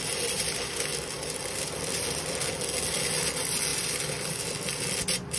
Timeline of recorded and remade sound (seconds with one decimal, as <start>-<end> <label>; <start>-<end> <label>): 0.0-5.4 recorded